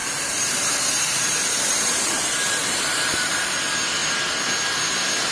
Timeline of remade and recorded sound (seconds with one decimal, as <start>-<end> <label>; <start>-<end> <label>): 0.0-3.1 remade; 3.1-5.3 recorded